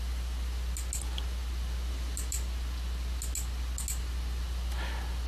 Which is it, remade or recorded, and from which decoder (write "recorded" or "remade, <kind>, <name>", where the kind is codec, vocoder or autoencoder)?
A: recorded